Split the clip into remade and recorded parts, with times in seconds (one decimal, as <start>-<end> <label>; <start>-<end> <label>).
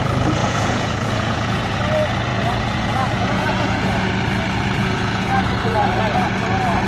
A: 0.0-0.4 recorded; 0.4-1.8 remade; 1.8-2.3 recorded; 2.3-4.1 remade; 4.1-4.8 recorded; 4.8-5.4 remade; 5.4-6.9 recorded